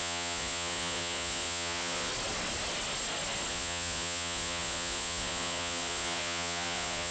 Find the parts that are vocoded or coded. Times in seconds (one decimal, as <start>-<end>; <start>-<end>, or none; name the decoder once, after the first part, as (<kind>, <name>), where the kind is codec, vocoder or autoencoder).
0.0-2.1 (vocoder, Vocos); 3.5-7.1